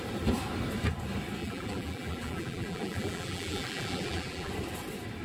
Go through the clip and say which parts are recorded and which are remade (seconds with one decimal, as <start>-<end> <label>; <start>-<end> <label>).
0.0-1.4 recorded; 1.4-4.5 remade; 4.5-5.2 recorded